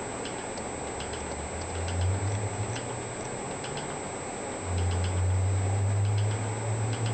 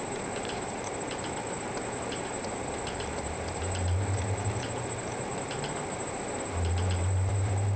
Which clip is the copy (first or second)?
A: second